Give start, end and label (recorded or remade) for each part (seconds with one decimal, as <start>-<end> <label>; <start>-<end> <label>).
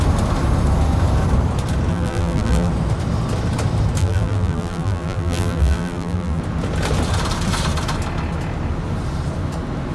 0.0-1.9 recorded; 1.9-2.7 remade; 2.7-4.0 recorded; 4.0-6.4 remade; 6.4-9.9 recorded